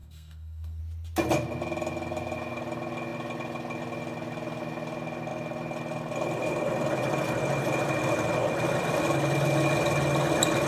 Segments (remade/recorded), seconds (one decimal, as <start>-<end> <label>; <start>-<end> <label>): 0.0-0.8 remade; 0.8-10.7 recorded